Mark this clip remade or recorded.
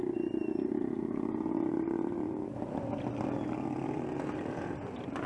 recorded